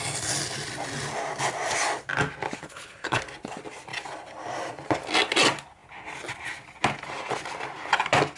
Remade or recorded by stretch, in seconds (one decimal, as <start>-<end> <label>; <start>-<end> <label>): 0.0-2.6 recorded; 2.6-3.2 remade; 3.2-8.4 recorded